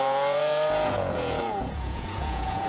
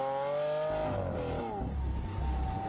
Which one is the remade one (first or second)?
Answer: first